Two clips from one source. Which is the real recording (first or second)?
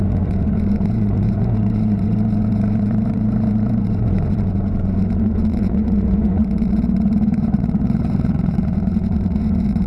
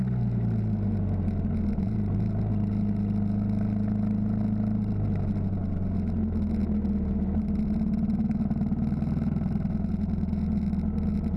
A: second